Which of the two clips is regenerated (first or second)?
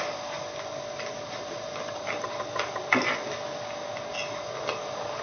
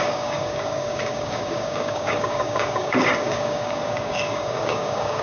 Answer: second